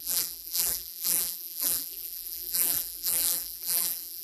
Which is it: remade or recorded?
remade